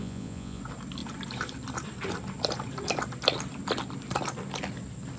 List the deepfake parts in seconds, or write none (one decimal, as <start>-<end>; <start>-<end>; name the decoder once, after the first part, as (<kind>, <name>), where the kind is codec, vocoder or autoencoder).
0.0-0.6 (vocoder, Vocos)